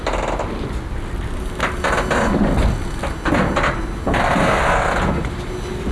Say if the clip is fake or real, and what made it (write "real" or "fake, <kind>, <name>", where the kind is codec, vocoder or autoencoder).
real